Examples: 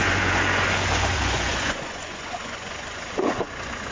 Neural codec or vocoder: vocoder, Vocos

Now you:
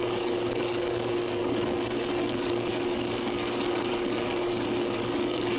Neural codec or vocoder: codec, DAC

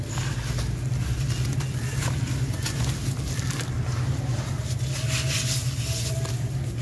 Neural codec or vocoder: none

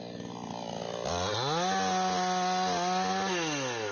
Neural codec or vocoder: none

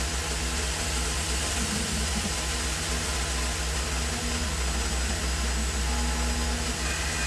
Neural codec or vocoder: none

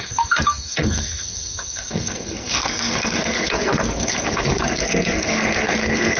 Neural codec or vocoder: codec, SNAC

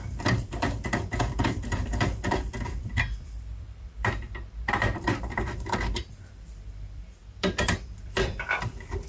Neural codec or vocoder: vocoder, BigVGAN v2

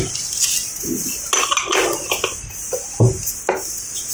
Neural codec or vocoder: none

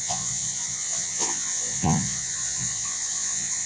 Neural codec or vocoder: vocoder, Vocos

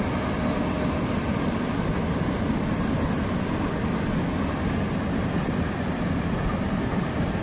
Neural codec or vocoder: none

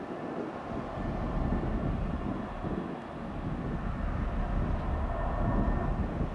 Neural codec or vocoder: none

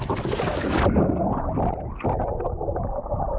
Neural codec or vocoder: none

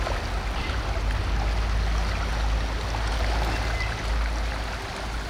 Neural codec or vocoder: none